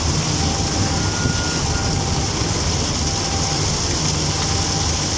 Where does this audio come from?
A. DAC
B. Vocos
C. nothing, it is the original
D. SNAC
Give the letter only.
C